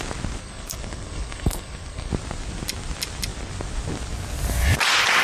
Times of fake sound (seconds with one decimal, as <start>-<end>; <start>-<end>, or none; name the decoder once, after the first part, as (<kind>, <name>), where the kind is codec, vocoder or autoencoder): 0.4-2.1 (codec, SNAC)